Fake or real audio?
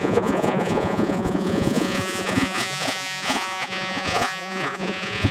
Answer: fake